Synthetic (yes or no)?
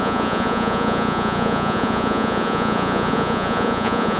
yes